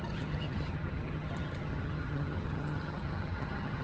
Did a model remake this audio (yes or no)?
yes